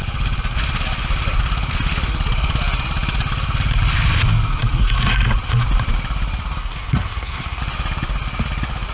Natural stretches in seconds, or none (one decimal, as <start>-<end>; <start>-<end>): 0.0-6.6; 7.6-8.9